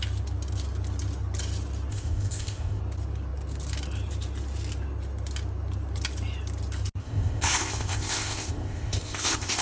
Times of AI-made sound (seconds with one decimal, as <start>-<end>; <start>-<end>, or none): 1.9-2.8; 7.0-9.6

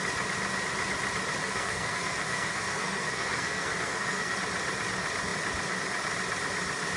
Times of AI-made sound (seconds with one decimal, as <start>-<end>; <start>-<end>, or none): 1.4-4.4

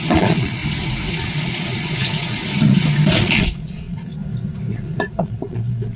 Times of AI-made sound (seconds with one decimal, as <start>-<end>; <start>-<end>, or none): 0.0-0.6; 1.1-2.4; 3.1-4.1; 4.7-6.0

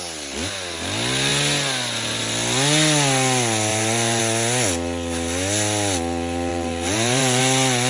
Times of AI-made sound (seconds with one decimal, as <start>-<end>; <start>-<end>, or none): 3.7-4.2; 6.5-7.4

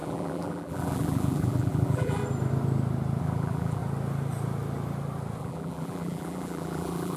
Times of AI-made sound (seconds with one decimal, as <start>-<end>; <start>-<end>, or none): 0.0-2.2; 3.2-3.8; 5.4-7.2

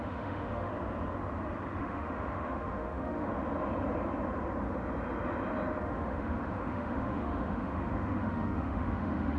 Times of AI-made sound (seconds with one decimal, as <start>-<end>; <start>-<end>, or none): 0.0-0.7; 1.8-3.3; 5.8-9.4